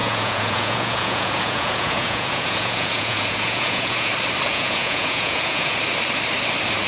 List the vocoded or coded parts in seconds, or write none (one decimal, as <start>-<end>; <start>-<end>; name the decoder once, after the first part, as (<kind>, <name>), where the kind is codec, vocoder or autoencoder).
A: 0.0-4.1 (vocoder, Vocos); 4.5-5.8